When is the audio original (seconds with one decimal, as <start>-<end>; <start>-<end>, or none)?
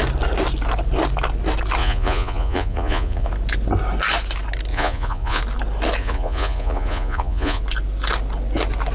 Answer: 0.0-1.8; 3.3-4.7; 5.4-6.0; 7.6-8.9